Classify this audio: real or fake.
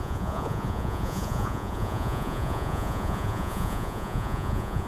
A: fake